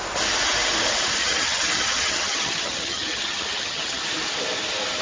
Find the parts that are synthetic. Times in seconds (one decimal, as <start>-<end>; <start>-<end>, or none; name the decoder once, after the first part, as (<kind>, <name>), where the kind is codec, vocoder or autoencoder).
1.2-4.0 (vocoder, HiFi-GAN)